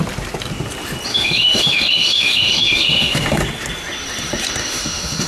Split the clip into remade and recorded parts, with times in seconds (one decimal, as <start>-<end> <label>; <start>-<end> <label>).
0.0-1.1 recorded; 1.1-3.4 remade; 3.4-4.6 recorded; 4.6-5.3 remade